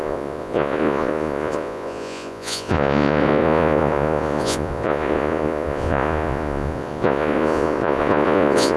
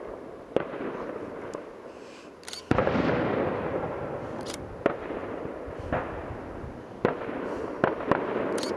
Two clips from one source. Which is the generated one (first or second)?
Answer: first